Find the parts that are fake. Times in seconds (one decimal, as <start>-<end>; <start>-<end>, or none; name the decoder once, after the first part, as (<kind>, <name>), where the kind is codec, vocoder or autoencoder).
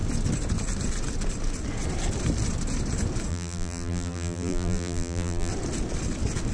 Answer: 3.3-5.5 (vocoder, BigVGAN v2)